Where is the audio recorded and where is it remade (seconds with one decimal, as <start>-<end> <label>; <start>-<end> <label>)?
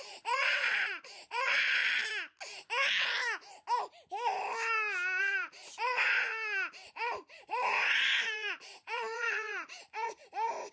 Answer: 0.0-1.8 remade; 1.8-5.2 recorded; 5.2-6.3 remade; 6.3-6.9 recorded; 6.9-10.7 remade